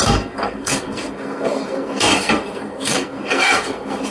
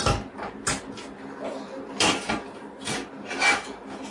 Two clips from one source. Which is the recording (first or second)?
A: second